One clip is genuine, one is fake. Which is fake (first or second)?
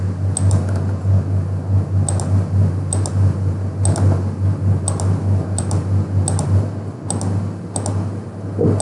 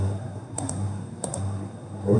second